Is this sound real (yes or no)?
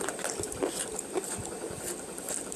yes